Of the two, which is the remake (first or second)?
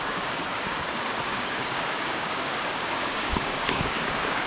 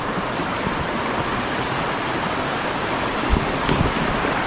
first